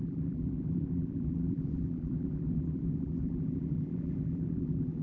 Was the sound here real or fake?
fake